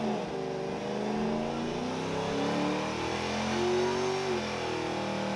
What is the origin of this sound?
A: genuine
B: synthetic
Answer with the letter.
A